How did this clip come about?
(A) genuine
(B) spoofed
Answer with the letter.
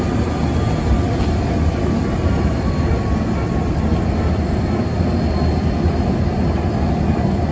A